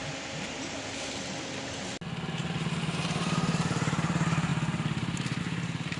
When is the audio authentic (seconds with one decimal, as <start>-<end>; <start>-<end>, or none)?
0.0-2.4; 4.5-5.4

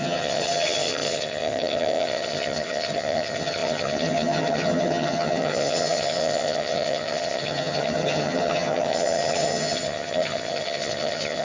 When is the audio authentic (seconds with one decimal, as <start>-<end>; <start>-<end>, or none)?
none